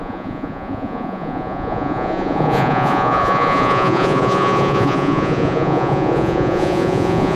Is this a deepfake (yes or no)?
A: yes